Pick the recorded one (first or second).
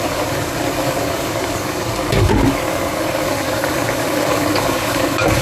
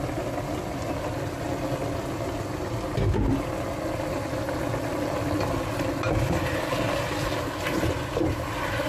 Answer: second